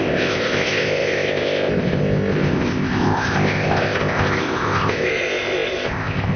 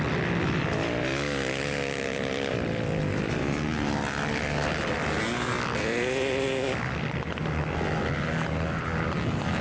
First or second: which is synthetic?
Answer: first